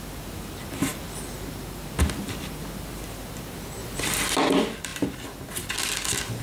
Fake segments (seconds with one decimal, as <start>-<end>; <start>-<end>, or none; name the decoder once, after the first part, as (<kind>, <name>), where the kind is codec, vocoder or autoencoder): none

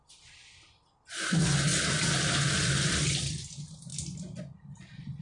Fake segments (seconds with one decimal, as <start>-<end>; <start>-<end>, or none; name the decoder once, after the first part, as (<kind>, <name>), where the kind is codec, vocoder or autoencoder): 0.0-1.7 (vocoder, BigVGAN v2); 2.5-3.9; 4.4-5.2

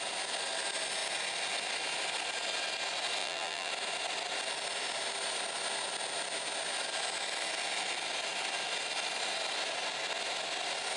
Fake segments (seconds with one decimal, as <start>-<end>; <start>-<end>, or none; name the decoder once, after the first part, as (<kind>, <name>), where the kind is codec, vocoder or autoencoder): 3.2-3.7 (vocoder, BigVGAN v2)